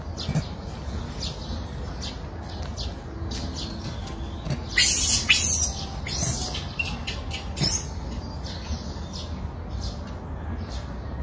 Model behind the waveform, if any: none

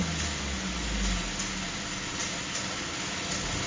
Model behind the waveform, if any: none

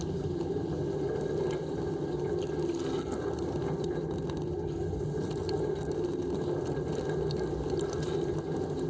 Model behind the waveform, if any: none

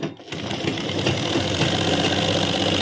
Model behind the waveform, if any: none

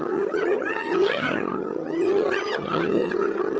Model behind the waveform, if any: vocoder, HiFi-GAN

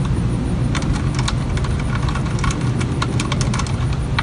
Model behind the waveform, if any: none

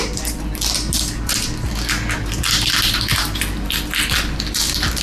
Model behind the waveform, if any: none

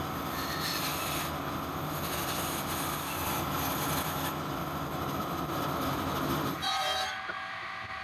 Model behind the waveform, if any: none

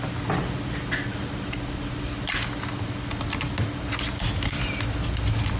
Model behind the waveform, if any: none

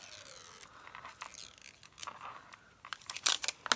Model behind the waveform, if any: none